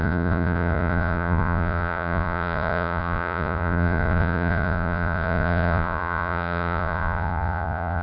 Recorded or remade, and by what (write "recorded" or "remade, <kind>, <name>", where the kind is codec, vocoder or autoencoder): remade, vocoder, Vocos